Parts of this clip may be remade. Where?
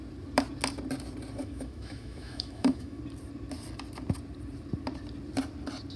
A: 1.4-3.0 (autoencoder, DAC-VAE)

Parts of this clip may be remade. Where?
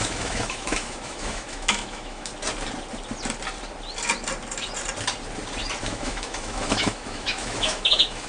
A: 0.0-2.3 (autoencoder, DAC-VAE); 5.8-8.3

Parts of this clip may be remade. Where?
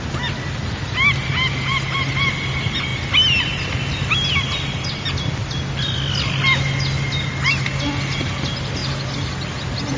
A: none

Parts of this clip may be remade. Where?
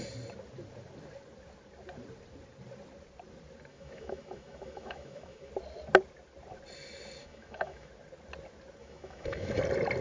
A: 3.7-5.5 (autoencoder, DAC-VAE); 7.2-7.9; 8.8-9.6